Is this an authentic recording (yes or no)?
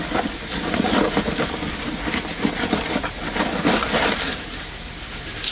yes